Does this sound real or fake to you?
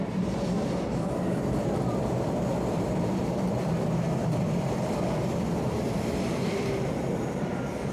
fake